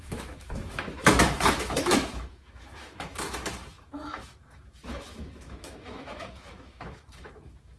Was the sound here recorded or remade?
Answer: remade